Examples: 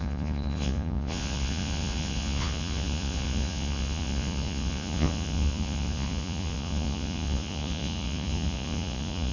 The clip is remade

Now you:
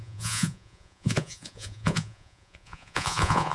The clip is remade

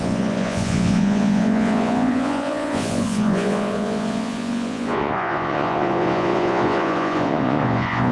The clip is remade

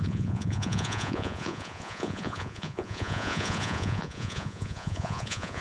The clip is remade